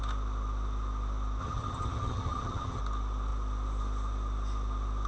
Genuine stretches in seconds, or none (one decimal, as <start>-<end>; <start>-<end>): 0.0-1.4; 2.8-5.1